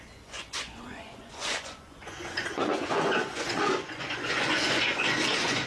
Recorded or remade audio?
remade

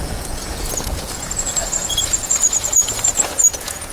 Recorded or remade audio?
remade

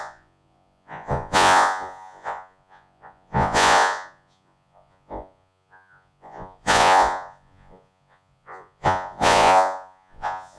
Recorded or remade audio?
remade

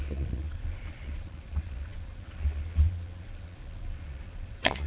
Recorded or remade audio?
remade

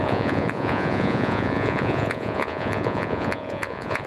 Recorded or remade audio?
remade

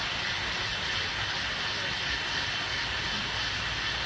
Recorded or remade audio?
recorded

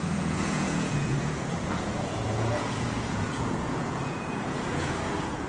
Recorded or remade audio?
remade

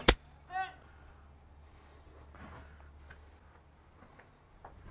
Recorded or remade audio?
recorded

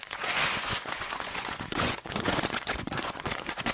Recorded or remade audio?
remade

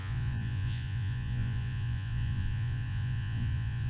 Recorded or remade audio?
remade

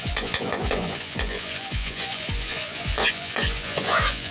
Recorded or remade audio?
remade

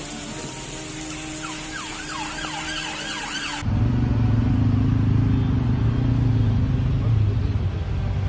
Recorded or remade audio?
recorded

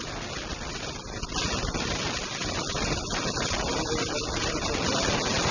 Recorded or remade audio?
recorded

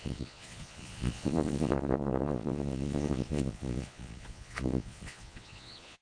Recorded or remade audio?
remade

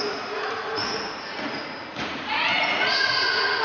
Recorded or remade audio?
remade